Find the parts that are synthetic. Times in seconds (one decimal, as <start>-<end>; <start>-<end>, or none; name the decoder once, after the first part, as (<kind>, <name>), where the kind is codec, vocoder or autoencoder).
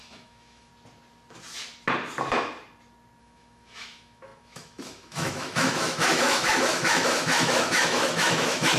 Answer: 0.0-0.7 (autoencoder, DAC-VAE); 3.2-8.8